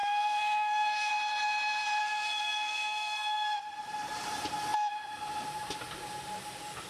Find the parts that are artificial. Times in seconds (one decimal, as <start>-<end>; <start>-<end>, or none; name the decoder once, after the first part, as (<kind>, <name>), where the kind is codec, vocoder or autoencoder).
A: 0.0-1.1 (codec, SNAC); 2.0-3.6

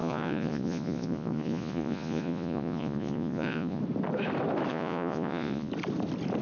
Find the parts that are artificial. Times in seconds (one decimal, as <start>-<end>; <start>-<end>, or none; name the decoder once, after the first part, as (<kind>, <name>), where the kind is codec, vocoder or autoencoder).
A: 0.0-3.8 (vocoder, Vocos); 4.7-5.7

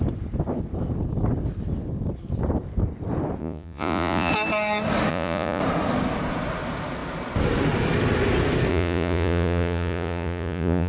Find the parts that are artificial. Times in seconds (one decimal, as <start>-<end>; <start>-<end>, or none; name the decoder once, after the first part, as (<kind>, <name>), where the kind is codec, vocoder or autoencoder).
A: 3.4-4.3 (vocoder, Vocos); 5.1-5.6; 8.7-10.9

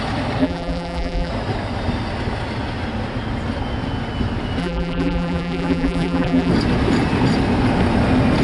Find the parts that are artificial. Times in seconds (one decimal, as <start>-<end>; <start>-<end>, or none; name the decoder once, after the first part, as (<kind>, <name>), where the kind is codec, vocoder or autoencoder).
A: 0.4-1.3 (vocoder, BigVGAN v2); 4.6-6.5

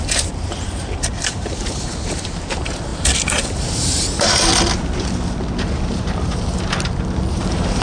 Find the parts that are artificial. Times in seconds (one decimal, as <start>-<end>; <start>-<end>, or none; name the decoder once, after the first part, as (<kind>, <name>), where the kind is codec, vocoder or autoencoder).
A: 0.0-4.5 (vocoder, BigVGAN v2); 7.3-7.8

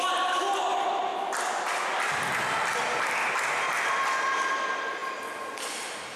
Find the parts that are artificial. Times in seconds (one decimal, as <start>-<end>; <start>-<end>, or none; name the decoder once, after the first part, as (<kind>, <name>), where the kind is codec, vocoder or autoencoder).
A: none

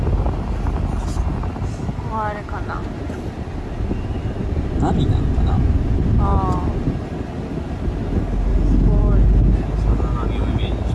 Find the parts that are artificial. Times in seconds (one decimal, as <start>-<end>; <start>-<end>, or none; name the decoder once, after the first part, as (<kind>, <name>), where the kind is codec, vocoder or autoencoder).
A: none